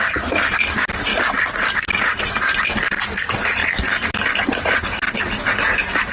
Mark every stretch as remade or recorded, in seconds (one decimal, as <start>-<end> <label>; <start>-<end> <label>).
0.0-6.1 recorded